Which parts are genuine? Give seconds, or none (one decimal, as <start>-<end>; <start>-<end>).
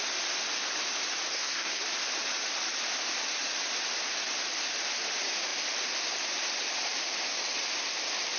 0.0-1.3; 1.8-8.4